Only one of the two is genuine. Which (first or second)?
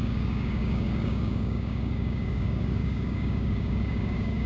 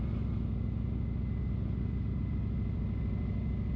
second